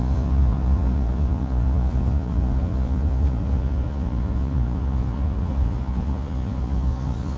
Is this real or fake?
fake